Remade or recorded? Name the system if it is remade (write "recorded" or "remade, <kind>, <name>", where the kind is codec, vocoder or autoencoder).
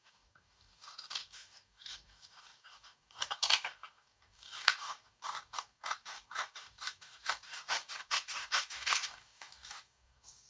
remade, codec, DAC